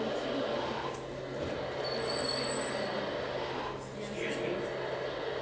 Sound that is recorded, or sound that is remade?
recorded